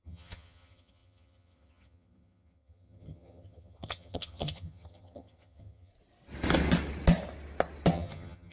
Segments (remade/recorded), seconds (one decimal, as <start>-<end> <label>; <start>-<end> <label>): 0.0-5.9 remade; 5.9-7.9 recorded; 7.9-8.5 remade